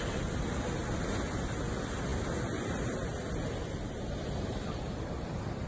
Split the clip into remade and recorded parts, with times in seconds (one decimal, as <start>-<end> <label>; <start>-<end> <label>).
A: 0.0-5.7 recorded